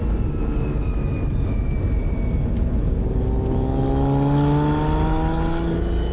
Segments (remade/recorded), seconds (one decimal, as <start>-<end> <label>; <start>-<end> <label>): 0.0-6.1 recorded